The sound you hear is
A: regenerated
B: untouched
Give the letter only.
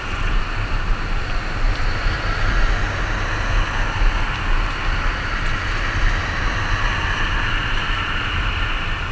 B